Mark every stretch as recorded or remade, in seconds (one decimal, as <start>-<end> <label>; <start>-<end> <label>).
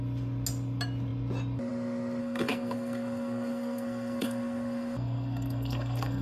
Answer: 0.0-2.2 recorded; 2.2-6.2 remade